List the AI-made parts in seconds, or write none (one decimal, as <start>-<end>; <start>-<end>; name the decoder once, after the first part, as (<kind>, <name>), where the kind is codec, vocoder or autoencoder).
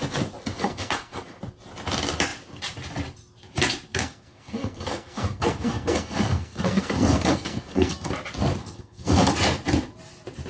0.5-1.4 (codec, SNAC); 3.9-8.1; 8.6-9.3